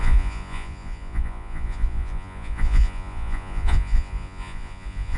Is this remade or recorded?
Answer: remade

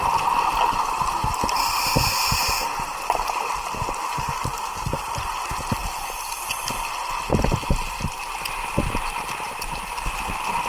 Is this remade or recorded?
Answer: recorded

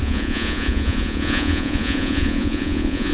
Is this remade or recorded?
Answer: remade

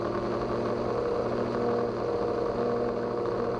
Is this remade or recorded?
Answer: recorded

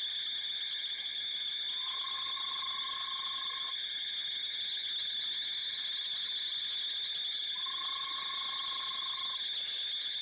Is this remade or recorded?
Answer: recorded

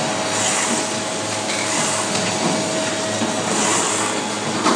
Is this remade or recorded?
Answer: recorded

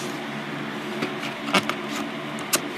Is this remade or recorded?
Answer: recorded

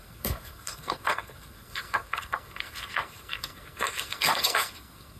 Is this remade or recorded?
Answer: remade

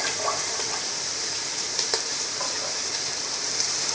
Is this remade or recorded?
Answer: remade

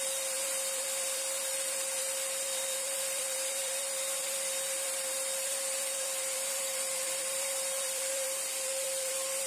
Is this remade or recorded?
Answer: remade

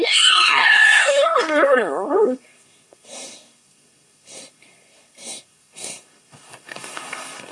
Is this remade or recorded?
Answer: remade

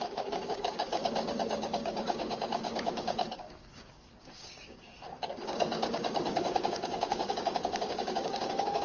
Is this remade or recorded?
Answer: remade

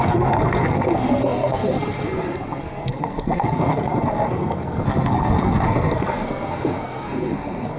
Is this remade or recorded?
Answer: remade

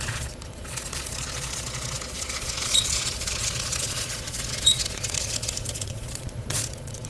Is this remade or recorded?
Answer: remade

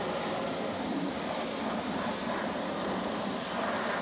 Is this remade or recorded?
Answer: recorded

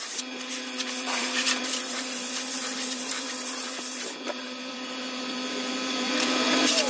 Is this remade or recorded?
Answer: remade